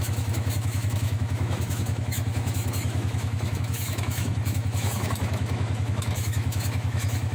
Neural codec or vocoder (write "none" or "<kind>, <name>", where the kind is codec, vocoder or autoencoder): autoencoder, DAC-VAE